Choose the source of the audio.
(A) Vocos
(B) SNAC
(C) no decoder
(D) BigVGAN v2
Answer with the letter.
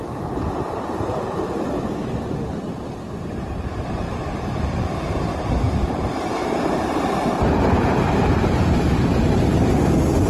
D